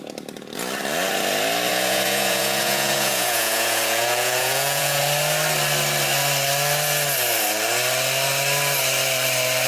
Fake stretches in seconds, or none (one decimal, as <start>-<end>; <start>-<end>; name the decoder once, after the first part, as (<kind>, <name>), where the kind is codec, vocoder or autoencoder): 1.7-5.0 (vocoder, Vocos)